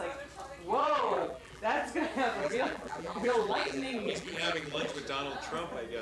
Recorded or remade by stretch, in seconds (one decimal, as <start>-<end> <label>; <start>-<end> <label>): 0.0-0.8 recorded; 0.8-1.6 remade; 1.6-2.4 recorded; 2.4-5.0 remade; 5.0-6.0 recorded